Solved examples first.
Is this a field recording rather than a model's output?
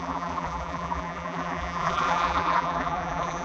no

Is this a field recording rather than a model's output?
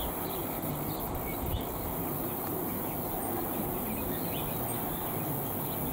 yes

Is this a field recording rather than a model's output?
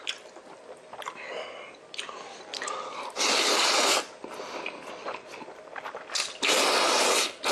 yes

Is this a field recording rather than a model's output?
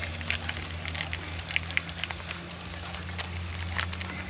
yes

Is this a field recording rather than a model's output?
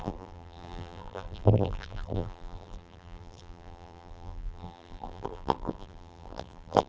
no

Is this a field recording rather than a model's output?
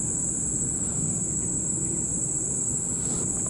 yes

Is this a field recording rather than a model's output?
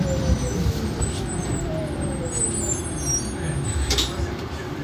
no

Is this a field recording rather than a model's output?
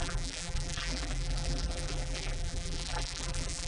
no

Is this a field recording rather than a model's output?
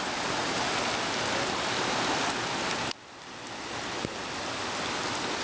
no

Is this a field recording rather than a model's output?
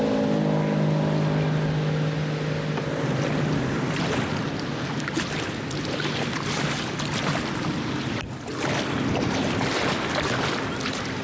yes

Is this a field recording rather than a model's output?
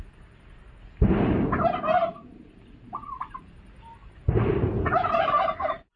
no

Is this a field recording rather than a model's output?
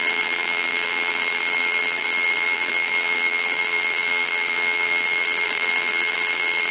no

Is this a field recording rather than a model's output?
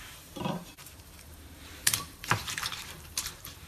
no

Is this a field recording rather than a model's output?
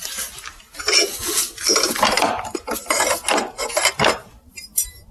yes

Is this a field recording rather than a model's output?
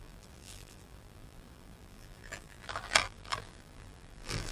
no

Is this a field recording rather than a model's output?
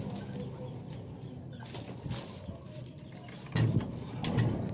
yes